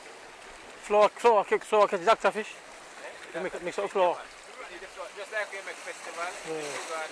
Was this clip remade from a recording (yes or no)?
no